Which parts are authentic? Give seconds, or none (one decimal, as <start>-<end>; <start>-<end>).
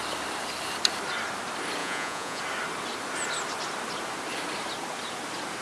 0.0-1.8; 2.4-5.6